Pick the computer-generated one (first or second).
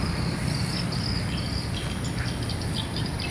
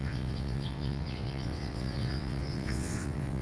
second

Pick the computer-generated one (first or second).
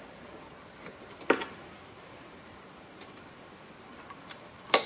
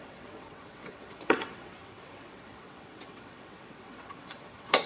second